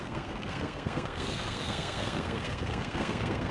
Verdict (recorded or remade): remade